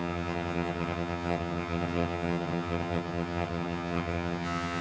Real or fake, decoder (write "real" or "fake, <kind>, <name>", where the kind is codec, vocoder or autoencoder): fake, vocoder, HiFi-GAN